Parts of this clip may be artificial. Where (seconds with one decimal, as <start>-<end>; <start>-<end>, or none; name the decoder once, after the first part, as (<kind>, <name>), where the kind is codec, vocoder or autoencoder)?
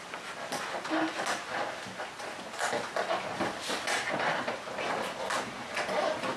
none